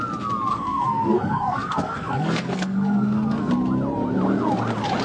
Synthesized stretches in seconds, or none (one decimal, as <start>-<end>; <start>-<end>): 0.5-3.5